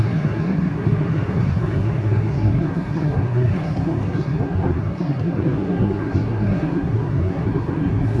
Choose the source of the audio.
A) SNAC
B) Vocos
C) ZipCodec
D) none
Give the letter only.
A